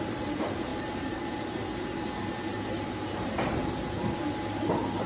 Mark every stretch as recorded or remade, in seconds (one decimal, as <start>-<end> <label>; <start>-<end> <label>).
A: 0.0-0.7 recorded; 0.7-1.4 remade; 1.4-2.5 recorded; 2.5-3.3 remade; 3.3-5.1 recorded

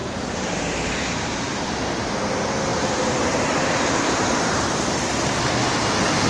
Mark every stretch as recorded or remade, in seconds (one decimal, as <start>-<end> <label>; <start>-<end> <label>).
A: 0.0-2.1 remade; 2.1-2.7 recorded; 2.7-4.9 remade; 4.9-6.3 recorded

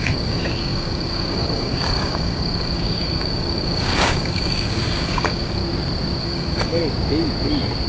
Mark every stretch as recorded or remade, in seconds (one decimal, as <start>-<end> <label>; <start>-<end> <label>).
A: 0.0-5.6 remade; 5.6-6.2 recorded; 6.2-6.8 remade; 6.8-7.9 recorded

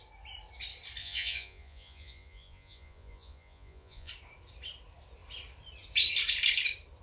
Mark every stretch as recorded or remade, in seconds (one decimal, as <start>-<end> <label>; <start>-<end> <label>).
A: 0.0-1.0 recorded; 1.0-4.1 remade; 4.1-7.0 recorded

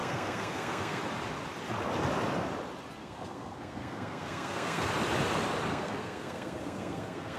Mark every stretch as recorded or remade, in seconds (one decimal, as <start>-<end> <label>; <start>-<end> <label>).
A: 0.0-1.0 remade; 1.0-3.0 recorded; 3.0-4.9 remade; 4.9-5.7 recorded; 5.7-7.4 remade